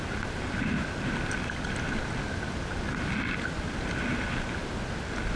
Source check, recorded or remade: recorded